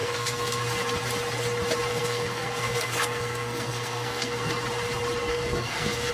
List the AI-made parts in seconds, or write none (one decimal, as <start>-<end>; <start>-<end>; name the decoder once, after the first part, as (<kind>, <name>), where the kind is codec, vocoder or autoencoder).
0.0-0.6 (codec, SNAC); 1.9-4.5; 5.3-6.1